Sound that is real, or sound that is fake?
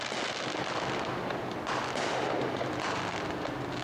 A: real